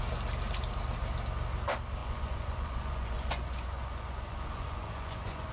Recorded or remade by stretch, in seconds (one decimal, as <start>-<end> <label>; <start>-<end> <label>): 0.0-2.0 recorded; 2.0-5.5 remade